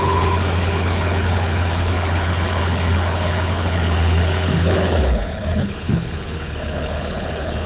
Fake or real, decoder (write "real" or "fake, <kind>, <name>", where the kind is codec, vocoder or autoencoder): fake, codec, HILCodec